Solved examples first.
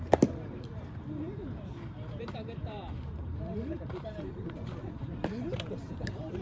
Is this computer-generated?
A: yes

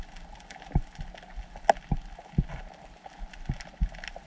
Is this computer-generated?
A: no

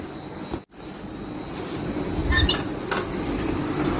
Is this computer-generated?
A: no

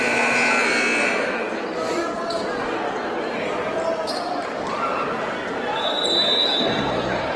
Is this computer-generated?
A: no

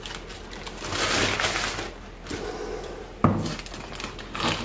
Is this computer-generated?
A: no